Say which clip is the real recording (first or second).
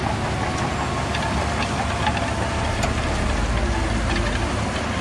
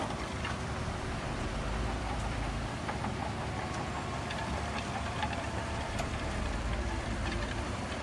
first